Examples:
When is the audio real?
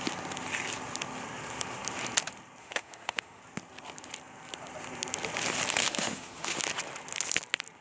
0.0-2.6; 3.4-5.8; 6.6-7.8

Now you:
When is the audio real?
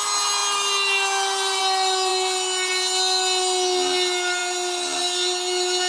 0.0-5.9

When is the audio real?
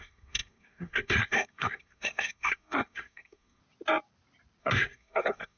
3.6-4.6